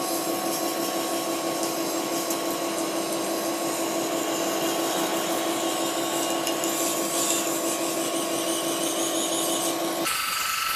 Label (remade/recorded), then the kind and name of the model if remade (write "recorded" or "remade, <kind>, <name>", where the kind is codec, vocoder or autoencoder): recorded